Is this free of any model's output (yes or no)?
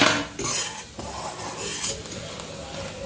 yes